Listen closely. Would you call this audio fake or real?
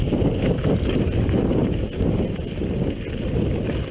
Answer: real